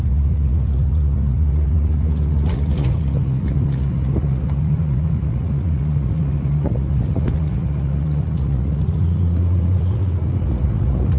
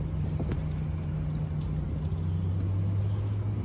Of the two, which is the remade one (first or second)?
first